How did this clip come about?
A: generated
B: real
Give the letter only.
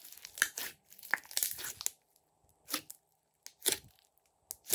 B